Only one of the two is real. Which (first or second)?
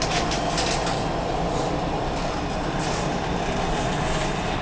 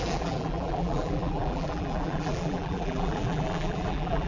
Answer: first